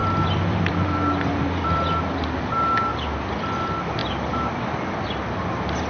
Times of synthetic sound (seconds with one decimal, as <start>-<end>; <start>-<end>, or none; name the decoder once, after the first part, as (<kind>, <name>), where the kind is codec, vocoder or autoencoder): 0.0-1.9 (vocoder, BigVGAN v2); 2.9-3.6; 4.0-4.8